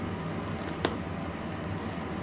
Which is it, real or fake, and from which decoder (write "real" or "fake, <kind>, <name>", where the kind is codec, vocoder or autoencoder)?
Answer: real